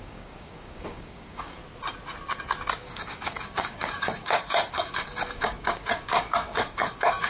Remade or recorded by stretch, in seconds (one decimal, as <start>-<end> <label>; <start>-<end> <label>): 0.0-1.6 remade; 1.6-2.9 recorded; 2.9-7.3 remade